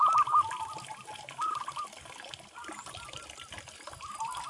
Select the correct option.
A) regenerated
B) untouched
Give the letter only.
B